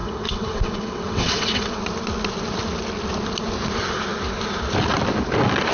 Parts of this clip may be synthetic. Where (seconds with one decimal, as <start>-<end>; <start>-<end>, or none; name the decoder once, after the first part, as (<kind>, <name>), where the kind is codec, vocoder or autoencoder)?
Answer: 0.0-1.8 (vocoder, WaveNeXt)